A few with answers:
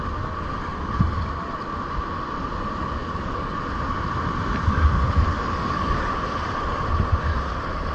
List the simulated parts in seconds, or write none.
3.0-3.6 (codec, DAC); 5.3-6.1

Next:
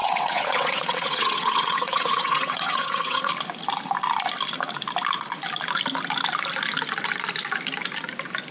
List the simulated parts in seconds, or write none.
0.0-3.3 (vocoder, WaveNeXt)

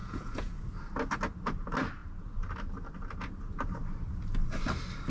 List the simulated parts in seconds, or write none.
0.0-0.6 (vocoder, Vocos)

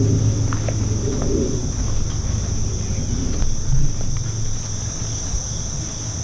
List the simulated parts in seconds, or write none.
none

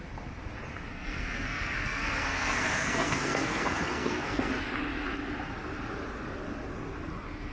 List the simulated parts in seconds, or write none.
0.9-4.5 (codec, SNAC)

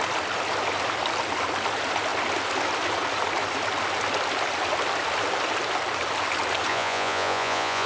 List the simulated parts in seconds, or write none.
6.7-7.9 (vocoder, Vocos)

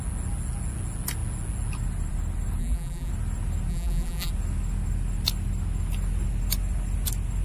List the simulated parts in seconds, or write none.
2.6-3.1 (vocoder, BigVGAN v2); 3.7-4.3

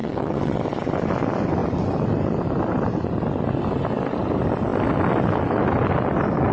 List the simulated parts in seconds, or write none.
0.0-0.6 (vocoder, WaveNeXt)